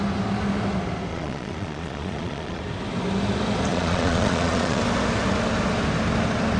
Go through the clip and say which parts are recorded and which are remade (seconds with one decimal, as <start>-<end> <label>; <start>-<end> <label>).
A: 0.0-1.1 recorded; 1.1-2.6 remade; 2.6-3.7 recorded; 3.7-4.8 remade; 4.8-6.6 recorded